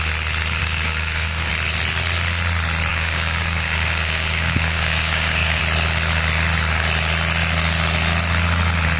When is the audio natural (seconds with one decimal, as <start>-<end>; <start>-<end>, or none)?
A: 0.0-0.6; 1.5-2.9; 5.6-9.0

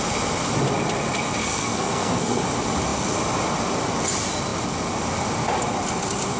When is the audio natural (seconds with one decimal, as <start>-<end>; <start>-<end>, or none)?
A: 0.0-1.4; 2.4-6.4

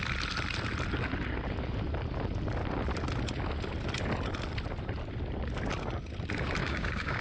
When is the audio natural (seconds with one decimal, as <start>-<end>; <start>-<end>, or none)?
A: 0.0-6.6

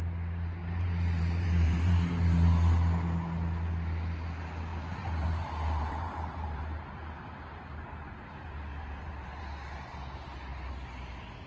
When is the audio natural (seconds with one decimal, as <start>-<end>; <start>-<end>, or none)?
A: 0.0-0.6; 2.1-4.7; 9.4-11.5

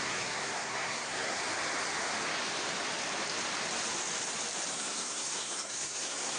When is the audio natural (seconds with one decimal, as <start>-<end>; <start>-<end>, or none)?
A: 1.4-4.7

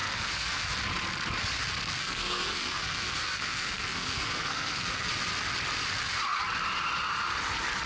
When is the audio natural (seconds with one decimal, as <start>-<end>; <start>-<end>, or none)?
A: 0.7-2.0; 5.1-7.9

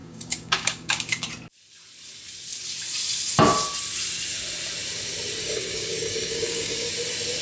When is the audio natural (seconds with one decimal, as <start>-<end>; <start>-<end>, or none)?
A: 1.3-5.4; 6.9-7.4

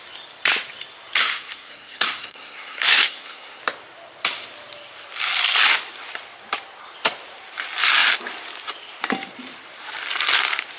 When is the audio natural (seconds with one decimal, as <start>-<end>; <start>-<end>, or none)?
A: 0.0-1.2; 3.6-10.8